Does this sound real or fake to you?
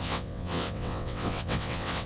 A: fake